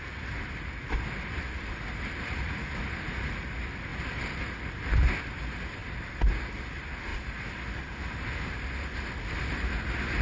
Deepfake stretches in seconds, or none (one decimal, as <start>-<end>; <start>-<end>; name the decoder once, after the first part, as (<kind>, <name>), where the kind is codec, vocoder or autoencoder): 3.9-5.2 (vocoder, BigVGAN v2); 5.8-6.5